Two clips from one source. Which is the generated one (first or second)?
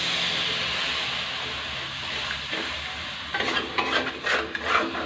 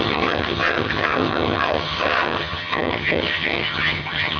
second